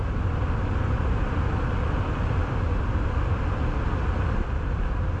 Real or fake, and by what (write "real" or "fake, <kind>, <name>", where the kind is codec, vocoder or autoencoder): real